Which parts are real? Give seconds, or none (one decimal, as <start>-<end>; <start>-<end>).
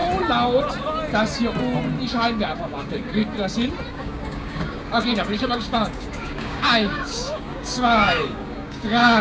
0.0-2.1; 3.2-3.9